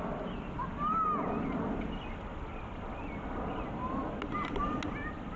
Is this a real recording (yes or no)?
yes